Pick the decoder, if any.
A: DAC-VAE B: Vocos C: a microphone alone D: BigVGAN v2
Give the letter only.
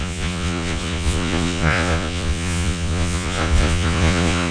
B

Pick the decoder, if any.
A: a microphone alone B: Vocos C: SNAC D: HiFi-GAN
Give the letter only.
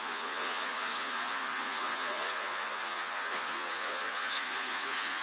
B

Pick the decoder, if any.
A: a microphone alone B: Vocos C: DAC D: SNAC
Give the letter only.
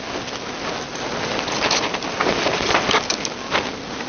A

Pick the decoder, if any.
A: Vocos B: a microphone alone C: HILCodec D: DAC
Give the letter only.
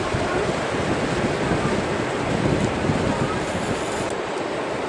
B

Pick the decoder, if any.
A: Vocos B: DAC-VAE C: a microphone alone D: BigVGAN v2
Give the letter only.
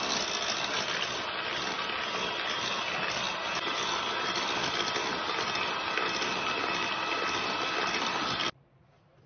C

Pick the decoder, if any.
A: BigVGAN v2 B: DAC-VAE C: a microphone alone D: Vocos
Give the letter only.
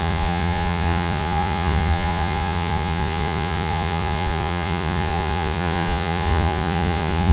D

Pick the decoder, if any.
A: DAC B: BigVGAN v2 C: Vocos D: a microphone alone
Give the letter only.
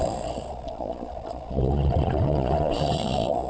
C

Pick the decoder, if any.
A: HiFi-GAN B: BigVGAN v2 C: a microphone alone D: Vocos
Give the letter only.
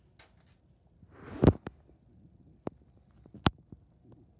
C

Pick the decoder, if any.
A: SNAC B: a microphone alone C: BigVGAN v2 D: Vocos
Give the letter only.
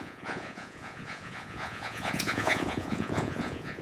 D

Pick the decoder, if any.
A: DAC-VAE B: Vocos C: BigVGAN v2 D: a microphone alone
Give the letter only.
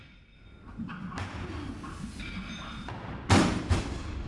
D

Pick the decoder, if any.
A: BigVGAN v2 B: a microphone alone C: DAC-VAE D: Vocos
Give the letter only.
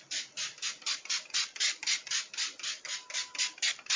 B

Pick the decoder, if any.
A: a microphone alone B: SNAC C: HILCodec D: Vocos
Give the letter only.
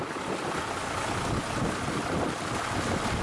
A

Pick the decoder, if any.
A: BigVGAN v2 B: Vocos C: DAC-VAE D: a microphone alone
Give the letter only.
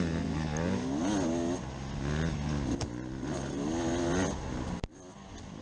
D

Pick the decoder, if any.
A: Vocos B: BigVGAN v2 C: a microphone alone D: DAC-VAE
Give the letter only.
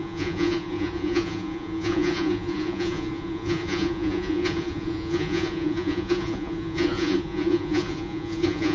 A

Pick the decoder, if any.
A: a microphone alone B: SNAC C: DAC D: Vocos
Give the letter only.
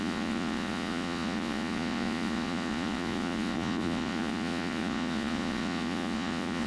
D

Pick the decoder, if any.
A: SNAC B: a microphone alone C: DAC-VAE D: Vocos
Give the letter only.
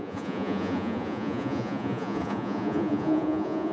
D